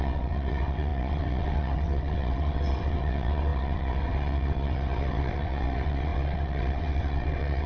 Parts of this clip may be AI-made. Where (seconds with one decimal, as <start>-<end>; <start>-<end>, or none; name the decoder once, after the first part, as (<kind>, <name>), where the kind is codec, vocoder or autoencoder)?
0.0-7.7 (vocoder, WaveNeXt)